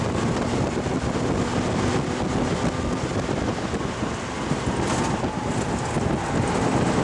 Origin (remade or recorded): recorded